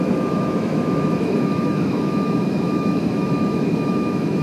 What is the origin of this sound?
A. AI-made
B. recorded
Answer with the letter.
A